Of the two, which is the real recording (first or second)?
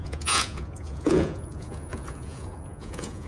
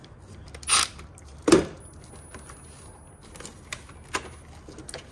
second